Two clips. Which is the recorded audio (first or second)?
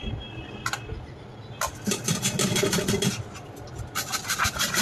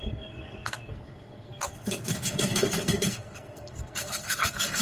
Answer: first